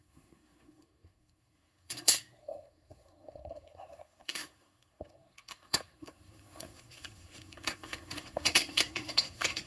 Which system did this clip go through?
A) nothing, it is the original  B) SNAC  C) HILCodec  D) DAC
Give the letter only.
B